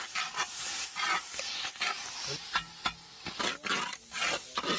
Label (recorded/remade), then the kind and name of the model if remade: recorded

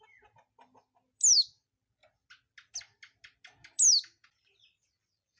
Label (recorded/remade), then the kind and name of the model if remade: recorded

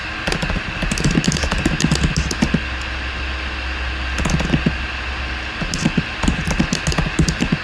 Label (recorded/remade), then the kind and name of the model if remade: recorded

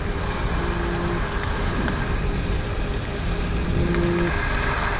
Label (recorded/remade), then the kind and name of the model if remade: recorded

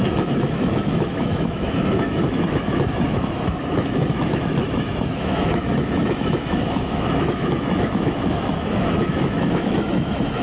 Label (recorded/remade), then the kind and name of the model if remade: remade, autoencoder, DAC-VAE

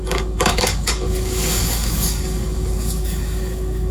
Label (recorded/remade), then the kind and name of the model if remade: remade, codec, DAC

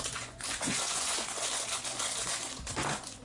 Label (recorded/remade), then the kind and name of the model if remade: remade, vocoder, Vocos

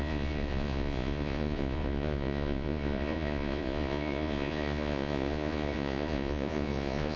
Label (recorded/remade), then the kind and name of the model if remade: remade, vocoder, Vocos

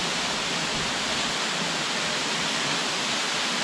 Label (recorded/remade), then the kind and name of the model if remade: recorded